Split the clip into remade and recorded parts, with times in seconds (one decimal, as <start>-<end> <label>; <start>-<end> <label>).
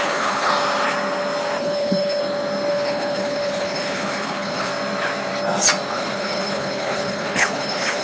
0.0-0.5 remade; 0.5-1.6 recorded; 1.6-2.2 remade; 2.2-2.7 recorded; 2.7-4.7 remade; 4.7-5.9 recorded; 5.9-8.0 remade